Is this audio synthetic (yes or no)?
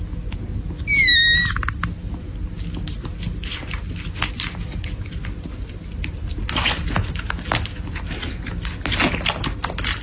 no